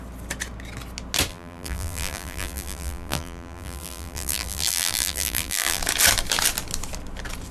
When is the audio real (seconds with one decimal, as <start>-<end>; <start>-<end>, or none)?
0.0-1.3; 5.8-7.5